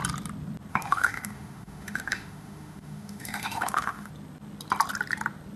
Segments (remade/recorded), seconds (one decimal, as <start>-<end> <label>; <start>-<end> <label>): 0.0-0.7 recorded; 0.7-4.1 remade; 4.1-5.6 recorded